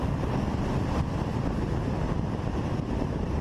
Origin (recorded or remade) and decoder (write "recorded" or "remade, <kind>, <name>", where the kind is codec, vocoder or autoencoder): remade, vocoder, BigVGAN v2